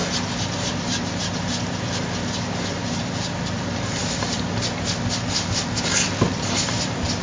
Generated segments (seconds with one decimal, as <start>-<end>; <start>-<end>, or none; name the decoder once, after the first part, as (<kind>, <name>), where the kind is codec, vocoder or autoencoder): 2.9-7.2 (vocoder, BigVGAN v2)